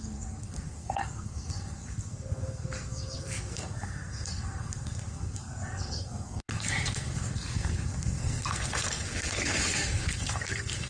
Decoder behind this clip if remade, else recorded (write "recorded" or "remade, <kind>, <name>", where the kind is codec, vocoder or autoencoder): remade, codec, SNAC